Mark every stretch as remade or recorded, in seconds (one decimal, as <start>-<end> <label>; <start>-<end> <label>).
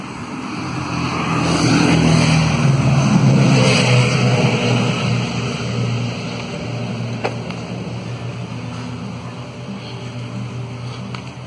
0.0-11.5 recorded